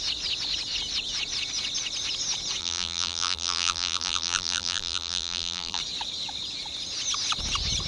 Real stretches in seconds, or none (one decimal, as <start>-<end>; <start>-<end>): 0.0-2.6; 5.8-7.9